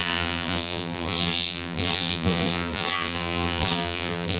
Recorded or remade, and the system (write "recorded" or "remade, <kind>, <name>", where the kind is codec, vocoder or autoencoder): remade, vocoder, BigVGAN v2